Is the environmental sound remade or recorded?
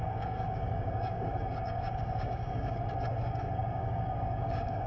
remade